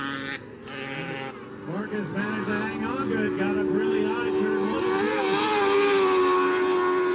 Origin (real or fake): real